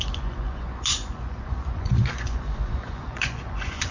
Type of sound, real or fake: fake